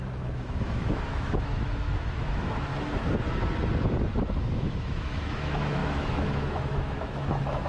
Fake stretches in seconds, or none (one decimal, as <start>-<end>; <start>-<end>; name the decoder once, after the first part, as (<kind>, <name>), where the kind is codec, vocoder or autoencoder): 0.0-2.7 (autoencoder, DAC-VAE); 4.4-7.7